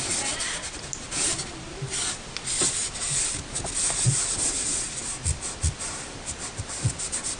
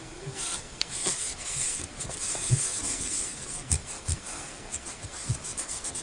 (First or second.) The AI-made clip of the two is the second